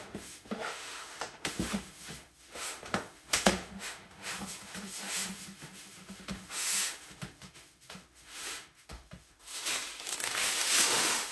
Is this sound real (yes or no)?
no